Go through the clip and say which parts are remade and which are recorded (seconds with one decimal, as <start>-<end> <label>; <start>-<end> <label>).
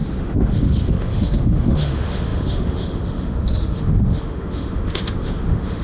0.0-5.8 remade